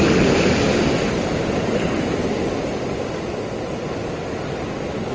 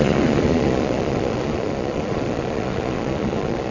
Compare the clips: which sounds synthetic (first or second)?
second